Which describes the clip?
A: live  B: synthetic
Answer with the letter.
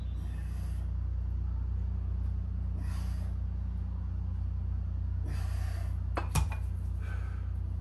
A